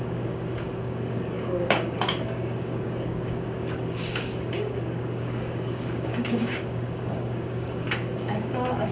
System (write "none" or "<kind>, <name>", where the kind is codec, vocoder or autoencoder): codec, DAC